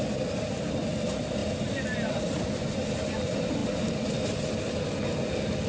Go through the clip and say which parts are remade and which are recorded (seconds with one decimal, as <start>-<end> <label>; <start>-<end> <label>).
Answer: 0.0-5.7 recorded